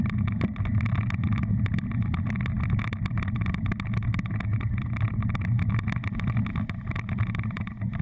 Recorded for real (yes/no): yes